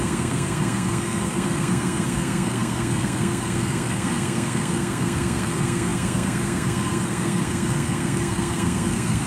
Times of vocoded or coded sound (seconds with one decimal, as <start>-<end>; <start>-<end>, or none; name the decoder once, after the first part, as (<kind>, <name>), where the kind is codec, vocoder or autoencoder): 0.0-9.3 (codec, SNAC)